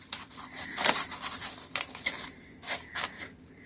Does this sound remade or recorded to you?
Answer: recorded